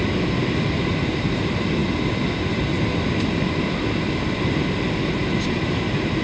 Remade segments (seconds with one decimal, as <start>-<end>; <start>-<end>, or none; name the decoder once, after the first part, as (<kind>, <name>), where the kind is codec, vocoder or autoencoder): none